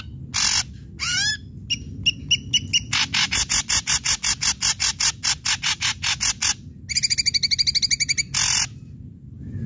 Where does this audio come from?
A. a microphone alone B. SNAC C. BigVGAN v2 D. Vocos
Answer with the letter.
A